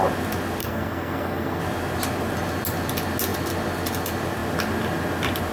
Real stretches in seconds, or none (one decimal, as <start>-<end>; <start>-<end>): 0.0-0.6; 1.6-5.5